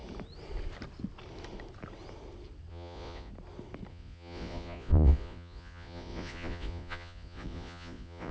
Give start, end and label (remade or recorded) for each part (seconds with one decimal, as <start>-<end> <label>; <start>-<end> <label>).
0.0-2.7 recorded; 2.7-3.3 remade; 3.3-3.9 recorded; 3.9-8.3 remade